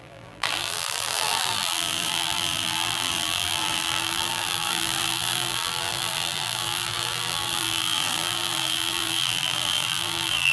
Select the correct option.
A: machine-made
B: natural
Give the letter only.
A